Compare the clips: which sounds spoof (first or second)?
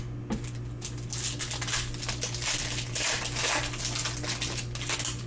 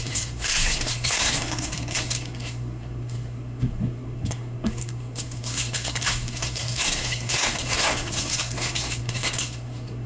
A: second